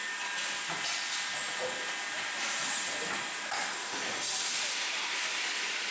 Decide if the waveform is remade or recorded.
recorded